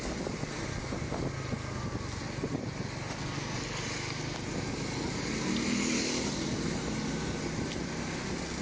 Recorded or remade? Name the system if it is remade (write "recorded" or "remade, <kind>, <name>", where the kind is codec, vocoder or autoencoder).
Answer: recorded